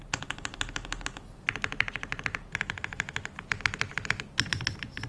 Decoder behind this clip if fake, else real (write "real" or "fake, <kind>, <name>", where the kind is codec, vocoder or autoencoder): real